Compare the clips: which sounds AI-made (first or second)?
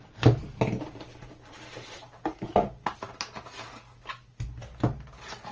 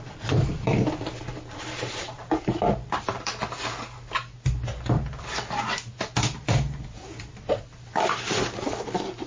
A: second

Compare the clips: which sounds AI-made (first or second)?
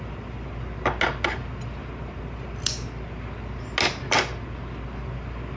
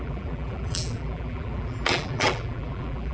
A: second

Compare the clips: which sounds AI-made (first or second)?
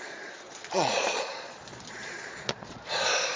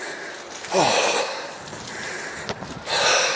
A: first